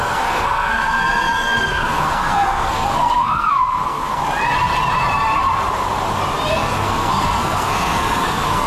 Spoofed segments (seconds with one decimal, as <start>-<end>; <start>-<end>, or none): 0.0-4.2; 6.5-8.7